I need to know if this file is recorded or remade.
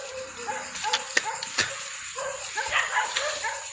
recorded